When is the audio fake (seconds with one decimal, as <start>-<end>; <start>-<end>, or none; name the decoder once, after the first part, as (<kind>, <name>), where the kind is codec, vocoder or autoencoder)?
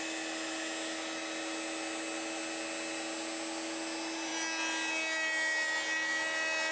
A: none